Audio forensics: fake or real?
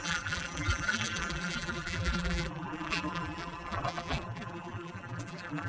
fake